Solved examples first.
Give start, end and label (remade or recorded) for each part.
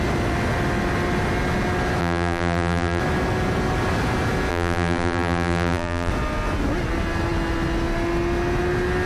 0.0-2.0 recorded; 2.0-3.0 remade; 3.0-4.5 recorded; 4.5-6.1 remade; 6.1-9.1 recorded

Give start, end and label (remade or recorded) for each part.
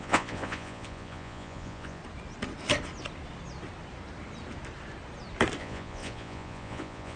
0.0-2.0 remade; 2.0-5.6 recorded; 5.6-7.2 remade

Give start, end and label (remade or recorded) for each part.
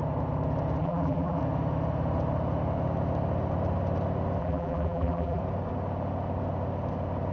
0.0-0.8 recorded; 0.8-1.4 remade; 1.4-4.4 recorded; 4.4-5.4 remade; 5.4-7.3 recorded